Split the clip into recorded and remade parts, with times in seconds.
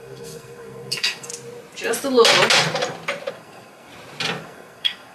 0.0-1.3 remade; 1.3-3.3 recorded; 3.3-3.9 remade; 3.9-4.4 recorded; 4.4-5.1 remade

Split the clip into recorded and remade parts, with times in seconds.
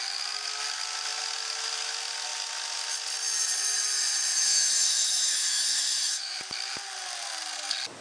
0.0-4.3 recorded; 4.3-6.4 remade; 6.4-8.0 recorded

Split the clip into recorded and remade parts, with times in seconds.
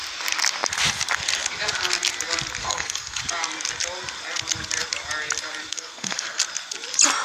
0.0-2.6 recorded; 2.6-3.2 remade; 3.2-5.7 recorded; 5.7-6.4 remade; 6.4-7.2 recorded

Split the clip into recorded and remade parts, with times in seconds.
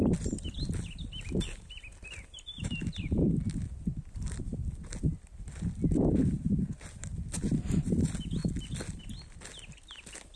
0.0-10.4 recorded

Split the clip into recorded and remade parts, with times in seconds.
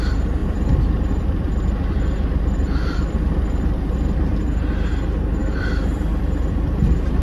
0.0-0.4 recorded; 0.4-4.7 remade; 4.7-5.4 recorded; 5.4-7.2 remade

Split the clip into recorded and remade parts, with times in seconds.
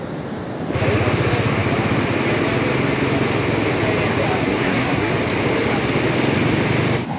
0.0-4.4 recorded; 4.4-5.1 remade; 5.1-7.2 recorded